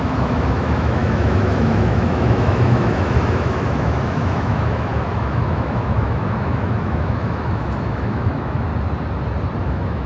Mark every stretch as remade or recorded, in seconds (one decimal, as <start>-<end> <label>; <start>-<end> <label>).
0.0-8.7 remade; 8.7-9.6 recorded; 9.6-10.1 remade